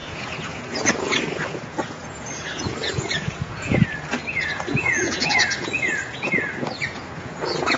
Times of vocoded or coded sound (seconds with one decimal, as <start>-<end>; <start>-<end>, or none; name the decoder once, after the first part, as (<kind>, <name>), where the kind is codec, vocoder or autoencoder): 0.0-7.8 (vocoder, Vocos)